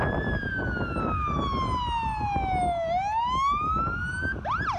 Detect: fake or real real